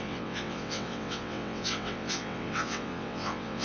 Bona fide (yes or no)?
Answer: no